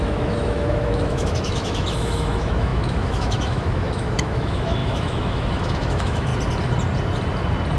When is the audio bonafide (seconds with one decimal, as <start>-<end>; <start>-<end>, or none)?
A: 6.3-7.8